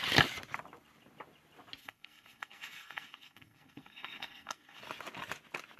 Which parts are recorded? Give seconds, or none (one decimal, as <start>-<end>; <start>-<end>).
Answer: 0.0-1.8; 4.8-5.8